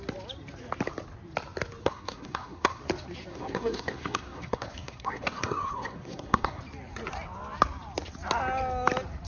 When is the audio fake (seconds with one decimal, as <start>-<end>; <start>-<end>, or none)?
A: 1.8-2.8; 3.3-6.6